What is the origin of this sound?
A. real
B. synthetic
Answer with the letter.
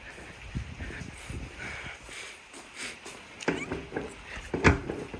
A